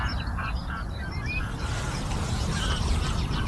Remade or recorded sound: recorded